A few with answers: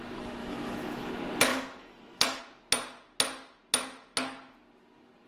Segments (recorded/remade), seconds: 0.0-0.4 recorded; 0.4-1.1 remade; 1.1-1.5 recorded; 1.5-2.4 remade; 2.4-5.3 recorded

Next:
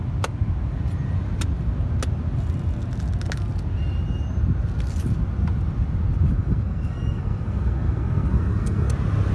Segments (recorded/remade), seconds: 0.0-6.3 recorded; 6.3-8.9 remade; 8.9-9.3 recorded

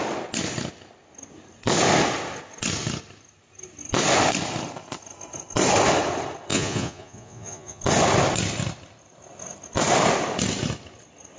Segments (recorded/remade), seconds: 0.0-6.5 recorded; 6.5-7.8 remade; 7.8-11.4 recorded

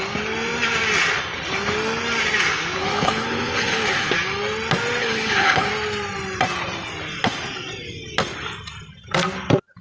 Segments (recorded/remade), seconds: 0.0-2.8 recorded; 2.8-4.1 remade; 4.1-5.0 recorded; 5.0-5.7 remade; 5.7-9.8 recorded

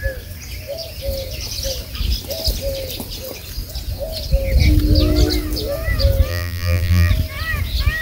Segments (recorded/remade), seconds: 0.0-6.3 recorded; 6.3-7.1 remade; 7.1-8.0 recorded

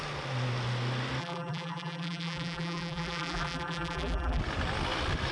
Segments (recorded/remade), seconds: 0.0-1.2 recorded; 1.2-4.4 remade; 4.4-5.3 recorded